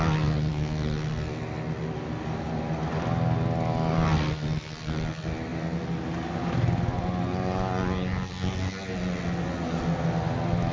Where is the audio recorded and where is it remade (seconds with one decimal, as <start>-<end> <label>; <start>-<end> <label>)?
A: 0.0-10.7 recorded